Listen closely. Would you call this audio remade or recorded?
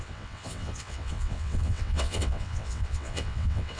remade